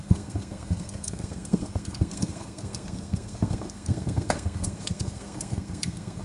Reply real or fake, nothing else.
fake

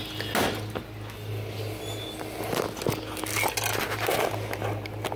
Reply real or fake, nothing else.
real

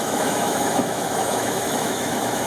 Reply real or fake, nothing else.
fake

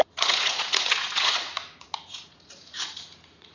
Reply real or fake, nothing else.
fake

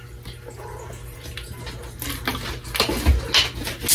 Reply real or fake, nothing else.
real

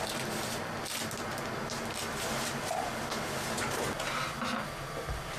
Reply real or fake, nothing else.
real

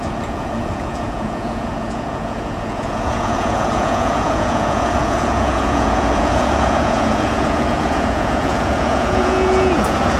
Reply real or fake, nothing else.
fake